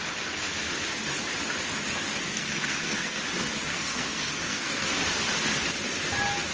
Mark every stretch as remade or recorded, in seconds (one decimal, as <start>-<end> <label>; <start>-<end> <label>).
0.0-2.3 recorded; 2.3-3.2 remade; 3.2-3.7 recorded; 3.7-5.0 remade; 5.0-6.5 recorded